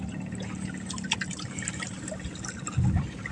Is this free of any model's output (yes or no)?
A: yes